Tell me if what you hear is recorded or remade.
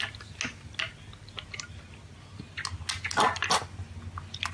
recorded